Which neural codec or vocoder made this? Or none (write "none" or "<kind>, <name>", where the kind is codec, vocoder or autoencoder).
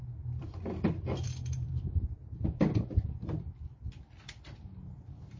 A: vocoder, BigVGAN v2